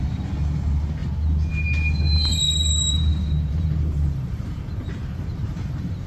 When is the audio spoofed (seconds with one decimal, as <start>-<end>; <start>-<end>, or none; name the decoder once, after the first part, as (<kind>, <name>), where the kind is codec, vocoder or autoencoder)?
2.3-6.1 (vocoder, BigVGAN v2)